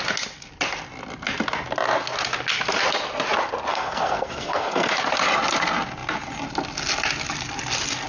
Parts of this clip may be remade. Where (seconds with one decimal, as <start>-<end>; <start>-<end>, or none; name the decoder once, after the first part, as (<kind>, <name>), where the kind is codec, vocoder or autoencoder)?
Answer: 3.7-4.9 (codec, SNAC)